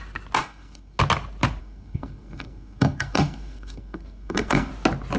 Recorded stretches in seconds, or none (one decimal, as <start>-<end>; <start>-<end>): 0.0-0.4; 1.0-1.6; 4.7-5.2